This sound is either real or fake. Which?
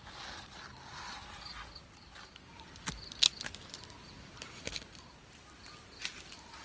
real